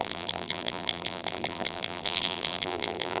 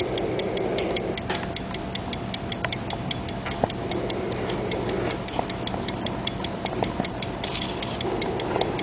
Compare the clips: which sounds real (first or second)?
second